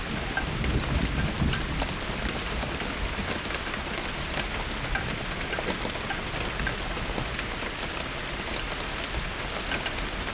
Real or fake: real